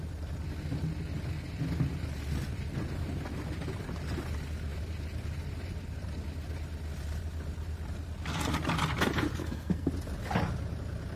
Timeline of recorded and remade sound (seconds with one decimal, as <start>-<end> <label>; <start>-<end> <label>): 0.0-9.4 recorded; 9.4-9.9 remade; 9.9-11.2 recorded